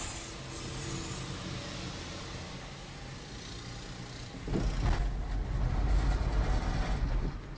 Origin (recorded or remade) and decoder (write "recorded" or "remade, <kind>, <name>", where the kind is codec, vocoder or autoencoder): recorded